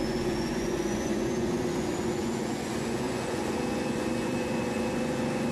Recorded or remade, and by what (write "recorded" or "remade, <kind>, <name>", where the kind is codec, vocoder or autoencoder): remade, vocoder, Vocos